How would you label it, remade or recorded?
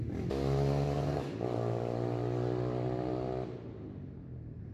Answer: recorded